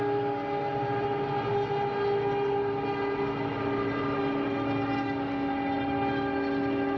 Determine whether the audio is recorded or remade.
recorded